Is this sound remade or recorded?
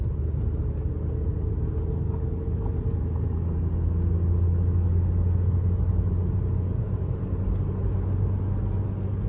recorded